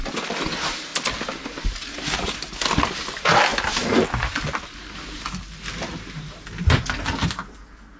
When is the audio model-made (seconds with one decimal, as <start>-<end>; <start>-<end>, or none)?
none